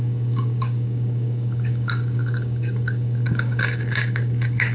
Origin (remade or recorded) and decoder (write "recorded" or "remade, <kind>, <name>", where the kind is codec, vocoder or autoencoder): remade, codec, DAC